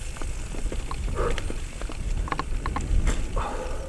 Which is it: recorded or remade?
recorded